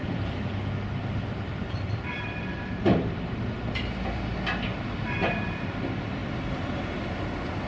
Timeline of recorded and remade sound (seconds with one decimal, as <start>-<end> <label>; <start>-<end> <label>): 0.0-0.5 remade; 0.5-1.0 recorded; 1.0-3.2 remade; 3.2-7.7 recorded